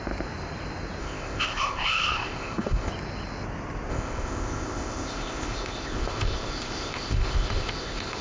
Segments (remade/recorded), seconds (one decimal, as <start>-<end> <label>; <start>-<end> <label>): 0.0-1.0 recorded; 1.0-2.9 remade; 2.9-3.9 recorded; 3.9-8.2 remade